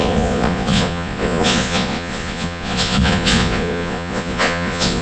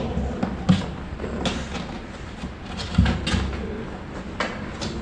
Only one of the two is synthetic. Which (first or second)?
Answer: first